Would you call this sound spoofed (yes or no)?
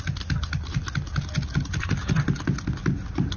no